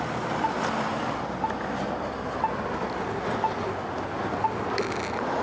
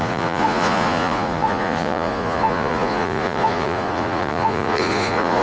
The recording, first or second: first